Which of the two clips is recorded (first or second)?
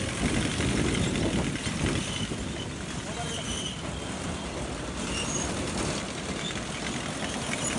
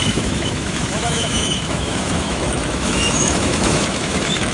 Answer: first